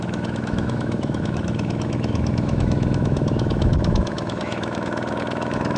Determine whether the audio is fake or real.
fake